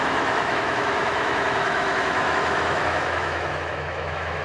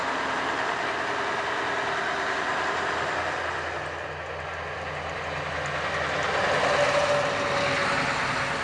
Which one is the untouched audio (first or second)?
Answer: second